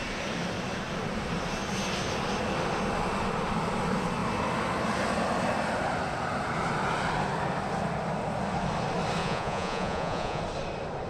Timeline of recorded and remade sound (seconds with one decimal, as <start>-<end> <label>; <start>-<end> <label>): 0.0-9.2 recorded; 9.2-10.4 remade; 10.4-11.1 recorded